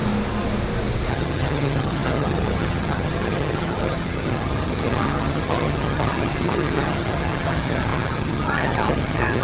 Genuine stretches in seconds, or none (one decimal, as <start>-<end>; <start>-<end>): 0.0-1.1